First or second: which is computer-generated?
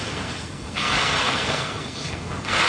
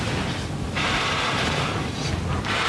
first